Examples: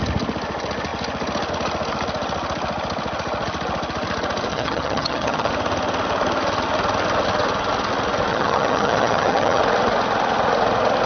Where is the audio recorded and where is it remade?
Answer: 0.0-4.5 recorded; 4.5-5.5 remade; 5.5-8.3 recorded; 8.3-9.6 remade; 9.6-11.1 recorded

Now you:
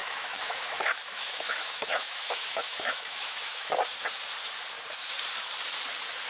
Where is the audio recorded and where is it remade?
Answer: 0.0-3.8 remade; 3.8-6.3 recorded

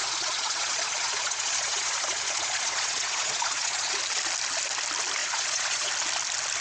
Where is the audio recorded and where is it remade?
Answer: 0.0-4.0 remade; 4.0-5.2 recorded; 5.2-5.9 remade; 5.9-6.6 recorded

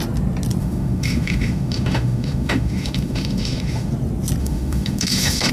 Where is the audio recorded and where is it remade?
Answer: 0.0-0.6 recorded; 0.6-3.9 remade; 3.9-4.4 recorded; 4.4-5.5 remade